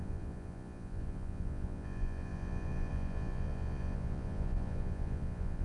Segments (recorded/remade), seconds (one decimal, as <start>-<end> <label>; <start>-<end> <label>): 0.0-5.6 remade